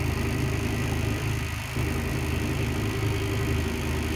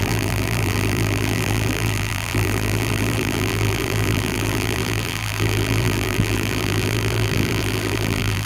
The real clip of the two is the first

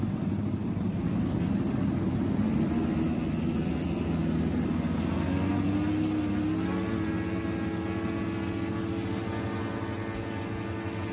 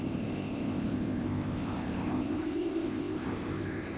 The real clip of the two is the first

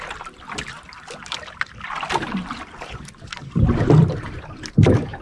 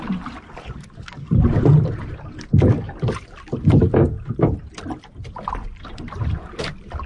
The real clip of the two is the second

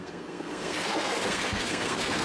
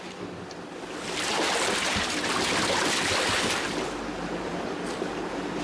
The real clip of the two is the second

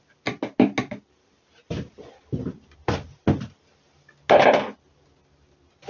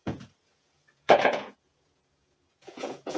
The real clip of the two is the first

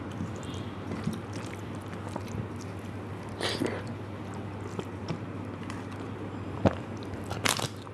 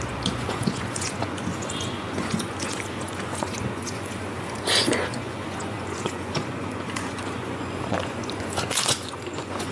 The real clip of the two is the first